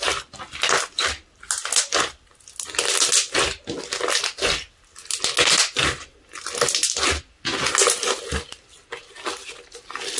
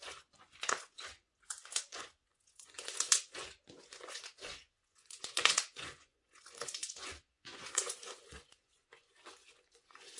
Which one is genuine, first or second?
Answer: first